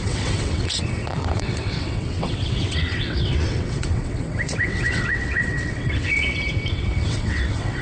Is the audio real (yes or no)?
no